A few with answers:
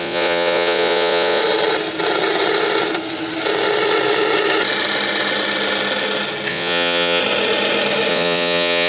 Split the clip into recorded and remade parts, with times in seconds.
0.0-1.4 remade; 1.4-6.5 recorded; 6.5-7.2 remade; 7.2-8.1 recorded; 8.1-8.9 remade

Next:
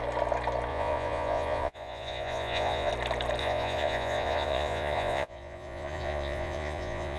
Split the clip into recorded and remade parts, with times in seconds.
0.0-0.7 recorded; 0.7-2.9 remade; 2.9-3.4 recorded; 3.4-7.2 remade

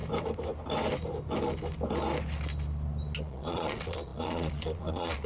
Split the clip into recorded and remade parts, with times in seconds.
0.0-3.2 recorded; 3.2-5.3 remade